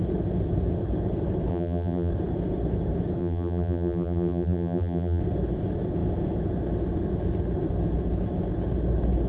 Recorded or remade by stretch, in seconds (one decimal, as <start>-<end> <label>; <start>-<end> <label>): 0.0-1.5 recorded; 1.5-2.1 remade; 2.1-3.2 recorded; 3.2-5.2 remade; 5.2-9.3 recorded